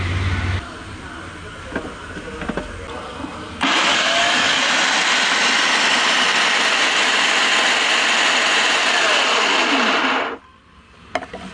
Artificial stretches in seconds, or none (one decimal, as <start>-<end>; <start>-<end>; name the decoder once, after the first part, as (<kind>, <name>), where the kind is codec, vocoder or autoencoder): 3.9-4.6 (codec, DAC)